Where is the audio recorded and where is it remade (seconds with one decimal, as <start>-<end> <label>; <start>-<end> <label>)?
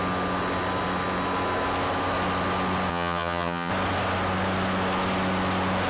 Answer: 0.0-2.9 recorded; 2.9-3.7 remade; 3.7-5.9 recorded